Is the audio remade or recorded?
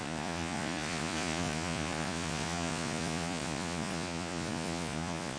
remade